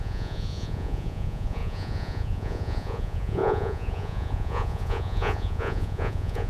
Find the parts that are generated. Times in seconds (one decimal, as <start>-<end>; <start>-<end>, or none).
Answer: 0.0-6.5